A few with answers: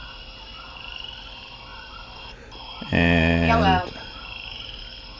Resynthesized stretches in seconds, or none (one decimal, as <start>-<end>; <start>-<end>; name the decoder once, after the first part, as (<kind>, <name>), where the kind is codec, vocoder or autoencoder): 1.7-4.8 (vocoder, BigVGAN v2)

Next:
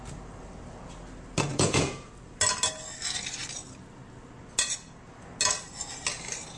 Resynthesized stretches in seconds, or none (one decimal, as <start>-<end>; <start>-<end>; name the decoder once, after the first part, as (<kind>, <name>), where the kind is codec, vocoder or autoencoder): 1.5-2.1 (vocoder, Vocos)

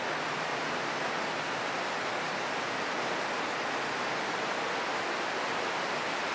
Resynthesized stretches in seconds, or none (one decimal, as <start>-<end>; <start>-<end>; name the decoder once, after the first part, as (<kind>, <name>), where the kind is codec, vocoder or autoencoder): none